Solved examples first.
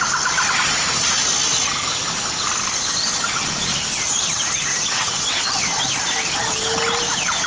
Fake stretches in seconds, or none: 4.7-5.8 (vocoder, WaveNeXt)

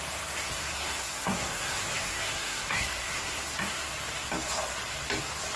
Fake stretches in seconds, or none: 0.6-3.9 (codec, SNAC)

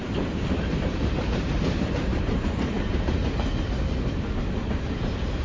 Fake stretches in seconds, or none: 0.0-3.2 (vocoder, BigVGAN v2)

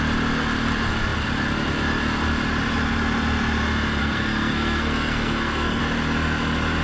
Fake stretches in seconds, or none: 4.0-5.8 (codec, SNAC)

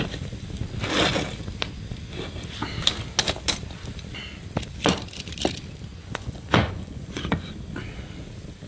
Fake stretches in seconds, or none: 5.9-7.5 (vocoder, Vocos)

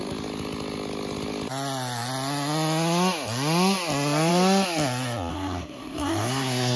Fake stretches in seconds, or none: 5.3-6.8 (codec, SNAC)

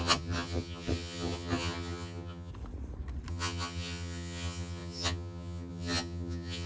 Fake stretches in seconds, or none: 0.0-2.5 (vocoder, HiFi-GAN); 3.3-6.7